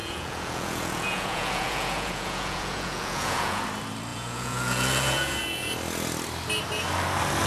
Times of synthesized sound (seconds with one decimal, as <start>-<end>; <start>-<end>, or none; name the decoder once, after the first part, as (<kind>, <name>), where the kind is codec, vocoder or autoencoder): 0.0-3.6 (vocoder, Vocos); 4.1-5.7